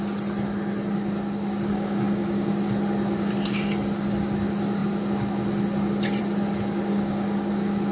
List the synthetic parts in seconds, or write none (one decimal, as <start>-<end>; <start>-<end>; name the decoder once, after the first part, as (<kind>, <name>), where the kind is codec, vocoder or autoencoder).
1.7-2.5 (codec, DAC); 6.9-7.5